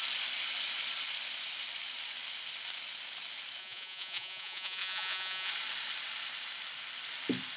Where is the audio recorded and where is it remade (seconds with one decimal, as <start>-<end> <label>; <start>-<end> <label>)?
0.0-3.6 recorded; 3.6-5.5 remade; 5.5-7.6 recorded